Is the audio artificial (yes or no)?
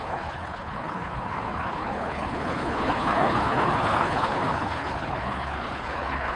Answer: yes